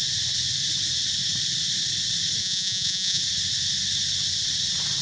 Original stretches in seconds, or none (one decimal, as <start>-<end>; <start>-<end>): 0.0-2.4; 3.2-5.0